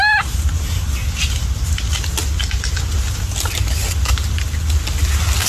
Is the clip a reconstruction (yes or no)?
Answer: no